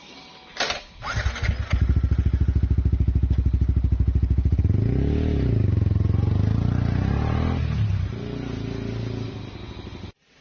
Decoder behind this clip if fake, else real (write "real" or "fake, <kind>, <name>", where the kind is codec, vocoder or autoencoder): real